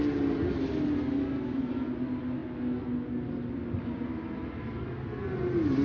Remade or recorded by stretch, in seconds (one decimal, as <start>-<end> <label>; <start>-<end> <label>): 0.0-5.8 recorded